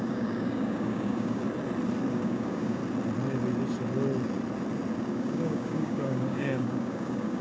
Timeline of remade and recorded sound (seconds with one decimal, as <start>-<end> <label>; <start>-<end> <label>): 0.0-1.4 remade; 1.4-2.1 recorded; 2.1-2.8 remade; 2.8-5.0 recorded; 5.0-7.4 remade